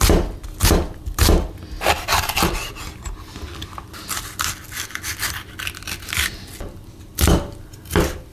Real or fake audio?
real